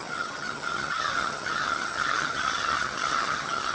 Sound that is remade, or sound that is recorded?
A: remade